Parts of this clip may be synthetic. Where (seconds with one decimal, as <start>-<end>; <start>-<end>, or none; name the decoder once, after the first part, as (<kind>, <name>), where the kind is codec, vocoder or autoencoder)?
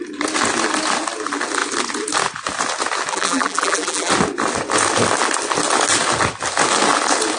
3.1-4.1 (vocoder, BigVGAN v2)